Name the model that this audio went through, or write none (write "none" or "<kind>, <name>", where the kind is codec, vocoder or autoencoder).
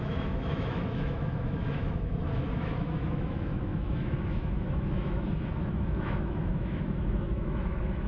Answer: autoencoder, DAC-VAE